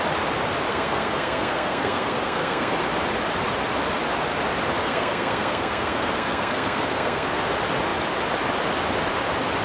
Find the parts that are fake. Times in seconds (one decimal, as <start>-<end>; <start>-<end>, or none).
0.7-2.8; 4.8-7.4